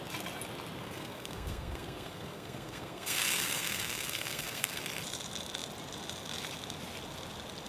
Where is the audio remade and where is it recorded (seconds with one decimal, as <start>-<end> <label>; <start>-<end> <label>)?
0.0-0.8 recorded; 0.8-4.8 remade; 4.8-7.7 recorded